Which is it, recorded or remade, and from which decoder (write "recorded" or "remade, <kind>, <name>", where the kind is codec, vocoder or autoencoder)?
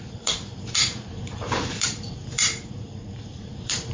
remade, vocoder, BigVGAN v2